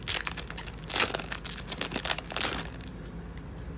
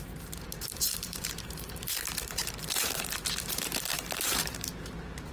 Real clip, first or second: first